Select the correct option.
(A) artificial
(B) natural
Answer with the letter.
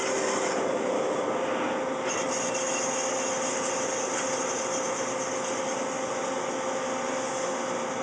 B